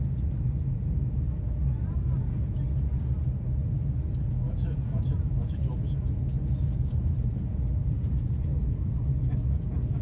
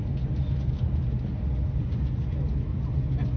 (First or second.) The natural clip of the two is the second